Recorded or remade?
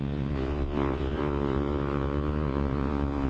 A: remade